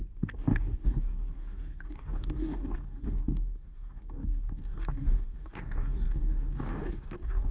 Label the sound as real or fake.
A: fake